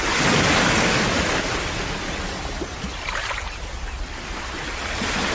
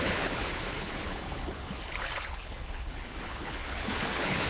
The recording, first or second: first